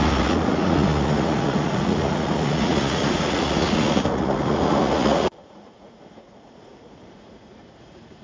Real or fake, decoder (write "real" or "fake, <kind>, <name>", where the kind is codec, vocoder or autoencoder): fake, vocoder, Vocos